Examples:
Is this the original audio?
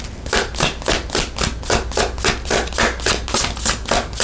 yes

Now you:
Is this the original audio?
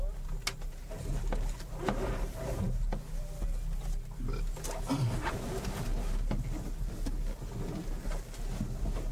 yes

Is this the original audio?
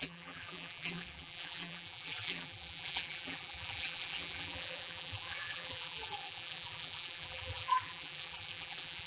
no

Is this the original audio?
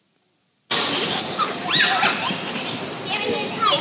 yes